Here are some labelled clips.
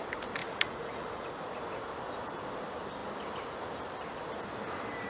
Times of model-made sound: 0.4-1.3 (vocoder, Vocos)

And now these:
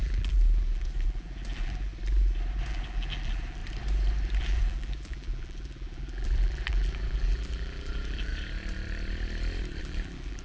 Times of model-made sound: 0.0-1.9 (vocoder, BigVGAN v2); 2.7-3.6; 4.4-8.3; 9.8-10.4

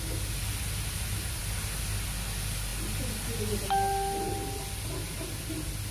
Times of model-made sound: none

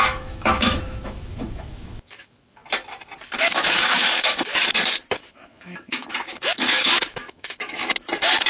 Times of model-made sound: 0.0-2.6 (autoencoder, DAC-VAE); 3.4-4.5; 5.3-7.8